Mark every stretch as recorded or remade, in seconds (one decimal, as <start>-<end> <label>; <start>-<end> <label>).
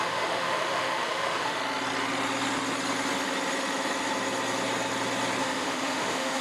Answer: 0.0-1.6 remade; 1.6-5.4 recorded; 5.4-6.4 remade